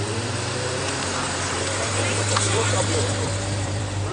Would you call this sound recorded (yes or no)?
no